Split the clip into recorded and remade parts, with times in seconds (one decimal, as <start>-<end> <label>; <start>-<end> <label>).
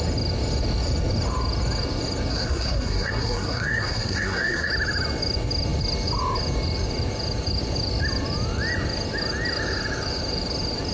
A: 0.0-2.3 recorded; 2.3-4.7 remade; 4.7-10.9 recorded